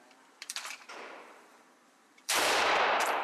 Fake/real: fake